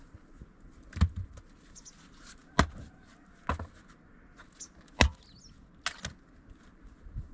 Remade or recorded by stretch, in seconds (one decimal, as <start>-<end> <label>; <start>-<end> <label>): 0.0-7.3 recorded